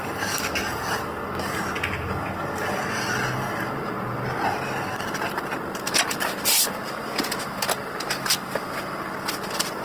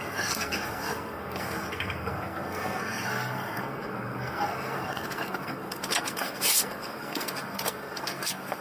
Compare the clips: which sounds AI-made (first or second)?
second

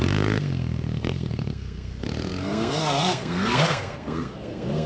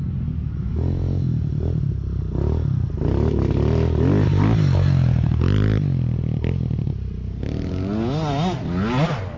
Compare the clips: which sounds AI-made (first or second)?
first